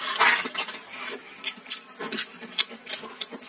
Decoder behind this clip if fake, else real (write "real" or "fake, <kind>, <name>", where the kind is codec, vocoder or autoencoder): real